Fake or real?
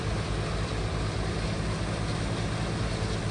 real